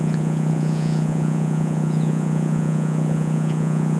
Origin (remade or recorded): remade